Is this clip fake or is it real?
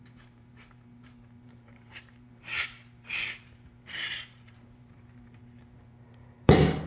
fake